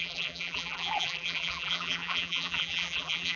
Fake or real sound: fake